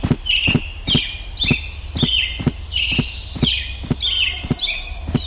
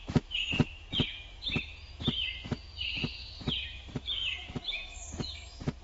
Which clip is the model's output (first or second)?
second